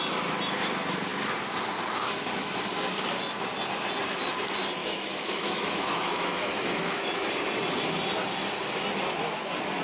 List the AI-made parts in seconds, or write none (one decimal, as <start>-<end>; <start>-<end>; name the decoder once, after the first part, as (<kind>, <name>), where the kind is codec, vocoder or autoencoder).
4.8-7.3 (autoencoder, DAC-VAE)